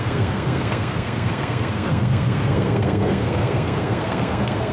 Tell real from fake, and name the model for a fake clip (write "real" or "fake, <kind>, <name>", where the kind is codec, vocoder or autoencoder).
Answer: fake, codec, SNAC